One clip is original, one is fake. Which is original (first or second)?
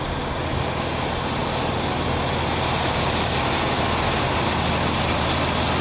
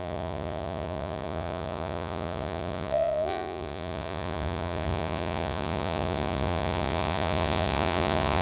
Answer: first